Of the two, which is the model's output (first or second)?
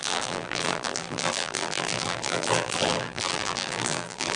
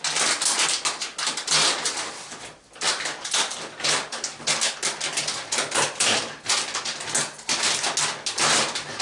first